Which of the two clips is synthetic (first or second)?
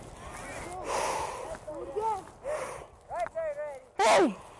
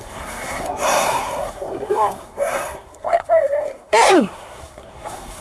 second